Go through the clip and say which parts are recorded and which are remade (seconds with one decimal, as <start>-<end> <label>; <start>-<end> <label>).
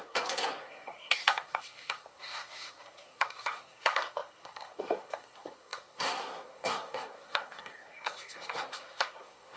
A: 0.0-9.6 remade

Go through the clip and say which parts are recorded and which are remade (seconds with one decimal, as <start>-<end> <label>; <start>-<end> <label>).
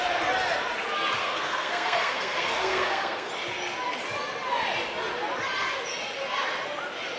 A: 0.0-1.2 recorded; 1.2-3.3 remade; 3.3-7.2 recorded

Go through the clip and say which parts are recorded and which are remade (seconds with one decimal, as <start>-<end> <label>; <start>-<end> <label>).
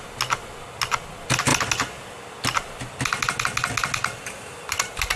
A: 0.0-5.2 recorded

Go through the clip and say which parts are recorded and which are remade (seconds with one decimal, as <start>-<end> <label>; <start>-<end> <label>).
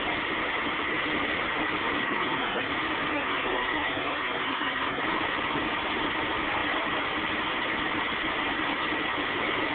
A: 0.0-2.0 recorded; 2.0-2.7 remade; 2.7-3.1 recorded; 3.1-5.0 remade; 5.0-9.7 recorded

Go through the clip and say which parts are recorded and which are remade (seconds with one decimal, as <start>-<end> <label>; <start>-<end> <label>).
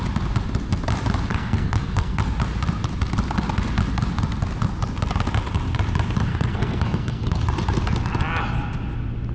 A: 0.0-1.3 recorded; 1.3-2.2 remade; 2.2-6.3 recorded; 6.3-7.4 remade; 7.4-9.3 recorded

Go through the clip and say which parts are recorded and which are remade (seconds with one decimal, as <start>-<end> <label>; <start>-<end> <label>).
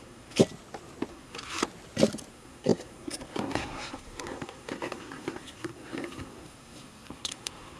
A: 0.0-0.4 remade; 0.4-1.1 recorded; 1.1-1.6 remade; 1.6-2.3 recorded; 2.3-7.8 remade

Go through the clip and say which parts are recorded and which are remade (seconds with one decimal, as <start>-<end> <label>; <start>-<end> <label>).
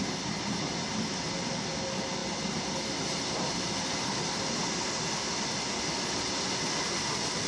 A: 0.0-7.5 recorded